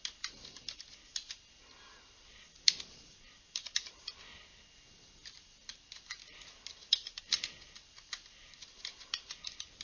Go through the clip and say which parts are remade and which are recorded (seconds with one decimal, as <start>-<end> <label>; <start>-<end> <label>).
0.0-9.8 remade